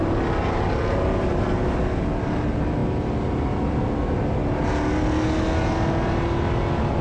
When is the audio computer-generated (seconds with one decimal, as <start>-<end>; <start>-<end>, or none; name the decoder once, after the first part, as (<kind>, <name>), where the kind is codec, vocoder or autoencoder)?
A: none